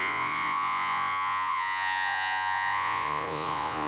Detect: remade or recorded remade